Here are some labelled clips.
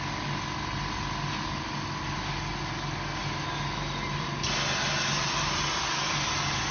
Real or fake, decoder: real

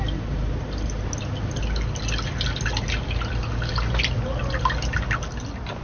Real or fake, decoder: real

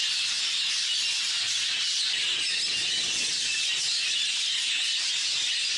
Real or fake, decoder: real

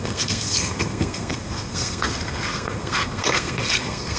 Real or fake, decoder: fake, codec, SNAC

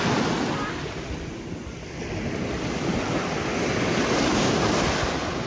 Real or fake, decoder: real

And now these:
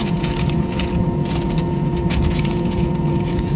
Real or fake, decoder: fake, vocoder, Vocos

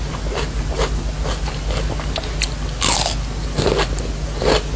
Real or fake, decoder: real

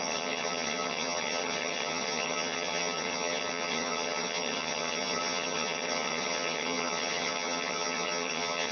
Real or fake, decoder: fake, vocoder, HiFi-GAN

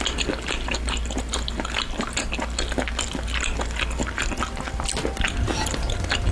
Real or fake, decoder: real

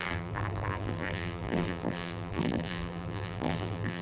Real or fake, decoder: fake, vocoder, BigVGAN v2